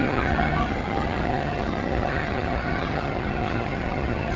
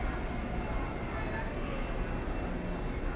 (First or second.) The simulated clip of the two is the first